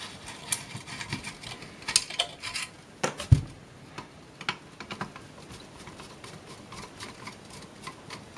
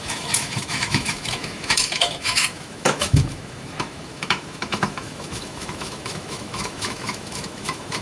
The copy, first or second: second